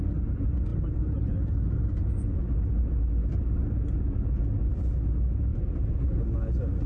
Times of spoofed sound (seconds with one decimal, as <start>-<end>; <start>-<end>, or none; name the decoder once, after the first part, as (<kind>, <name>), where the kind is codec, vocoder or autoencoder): 0.7-1.3 (vocoder, BigVGAN v2); 5.5-6.2